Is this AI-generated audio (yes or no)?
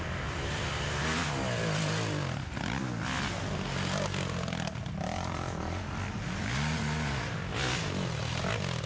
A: no